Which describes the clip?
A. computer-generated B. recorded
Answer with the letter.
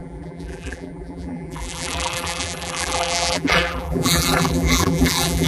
A